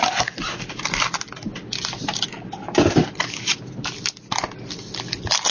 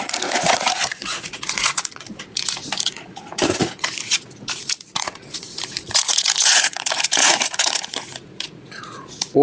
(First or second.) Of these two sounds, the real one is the first